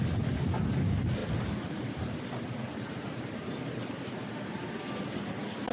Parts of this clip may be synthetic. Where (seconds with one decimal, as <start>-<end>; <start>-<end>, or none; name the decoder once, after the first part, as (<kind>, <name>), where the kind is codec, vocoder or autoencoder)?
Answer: 1.2-4.6 (vocoder, BigVGAN v2)

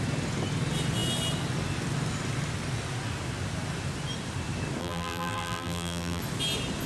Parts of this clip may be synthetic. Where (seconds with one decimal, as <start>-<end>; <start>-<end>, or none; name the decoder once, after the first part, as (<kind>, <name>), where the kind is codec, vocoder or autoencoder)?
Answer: 4.8-6.2 (vocoder, BigVGAN v2)

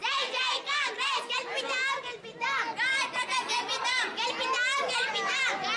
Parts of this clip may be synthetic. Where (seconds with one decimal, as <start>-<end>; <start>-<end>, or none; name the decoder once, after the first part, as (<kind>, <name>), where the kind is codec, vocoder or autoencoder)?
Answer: 0.0-1.1 (vocoder, BigVGAN v2); 2.9-4.3